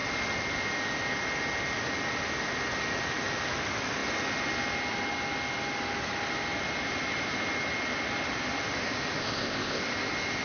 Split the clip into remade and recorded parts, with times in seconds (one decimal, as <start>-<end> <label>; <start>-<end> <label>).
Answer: 0.0-9.2 recorded; 9.2-9.8 remade; 9.8-10.4 recorded